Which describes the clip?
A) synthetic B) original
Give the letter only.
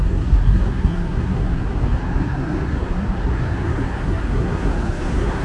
A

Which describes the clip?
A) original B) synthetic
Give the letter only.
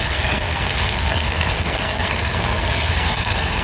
B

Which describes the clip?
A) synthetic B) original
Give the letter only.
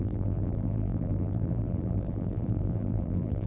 A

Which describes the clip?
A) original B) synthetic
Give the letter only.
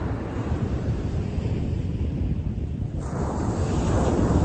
A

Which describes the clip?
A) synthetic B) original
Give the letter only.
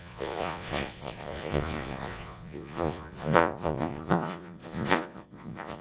A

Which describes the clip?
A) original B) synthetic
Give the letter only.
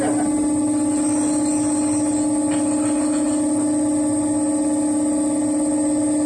A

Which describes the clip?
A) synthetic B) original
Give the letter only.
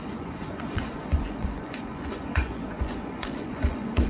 A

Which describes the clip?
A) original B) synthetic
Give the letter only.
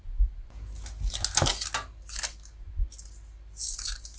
A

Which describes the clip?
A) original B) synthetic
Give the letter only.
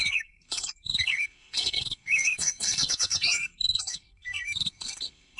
B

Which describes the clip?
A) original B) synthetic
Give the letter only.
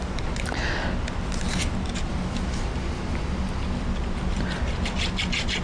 A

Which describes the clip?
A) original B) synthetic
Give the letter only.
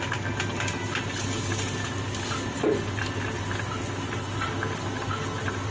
A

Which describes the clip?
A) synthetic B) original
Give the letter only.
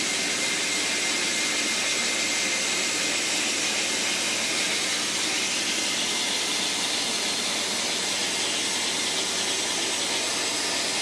B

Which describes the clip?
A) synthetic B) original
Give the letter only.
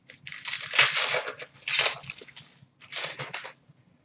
B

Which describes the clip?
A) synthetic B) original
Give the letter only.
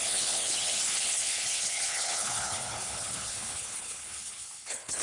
A